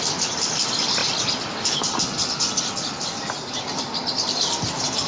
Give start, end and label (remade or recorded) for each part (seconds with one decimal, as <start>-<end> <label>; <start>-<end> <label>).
0.0-5.1 recorded